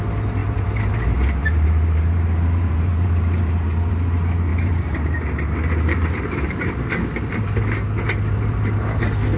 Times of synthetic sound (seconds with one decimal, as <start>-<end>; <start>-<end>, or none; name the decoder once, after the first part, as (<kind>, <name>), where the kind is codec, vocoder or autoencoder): 0.4-3.9 (vocoder, BigVGAN v2); 4.5-9.0